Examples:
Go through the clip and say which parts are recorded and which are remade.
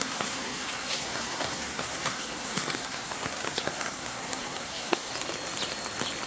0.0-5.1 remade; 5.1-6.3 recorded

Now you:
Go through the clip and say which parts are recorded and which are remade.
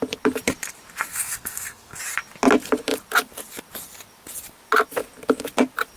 0.0-1.1 recorded; 1.1-2.0 remade; 2.0-6.0 recorded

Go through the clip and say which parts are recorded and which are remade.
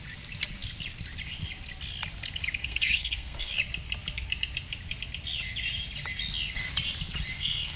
0.0-2.6 recorded; 2.6-3.5 remade; 3.5-7.3 recorded; 7.3-7.8 remade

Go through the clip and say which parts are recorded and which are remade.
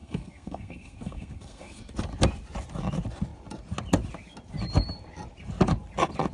0.0-1.9 remade; 1.9-6.3 recorded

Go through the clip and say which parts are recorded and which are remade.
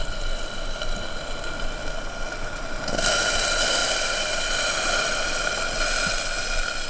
0.0-6.9 recorded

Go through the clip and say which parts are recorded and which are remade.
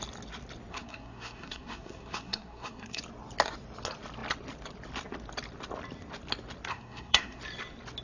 0.0-0.7 recorded; 0.7-3.0 remade; 3.0-6.7 recorded; 6.7-7.4 remade; 7.4-8.0 recorded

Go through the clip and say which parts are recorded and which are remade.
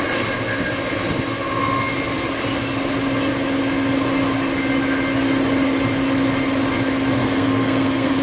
0.0-7.2 recorded; 7.2-8.2 remade